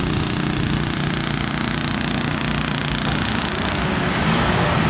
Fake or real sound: real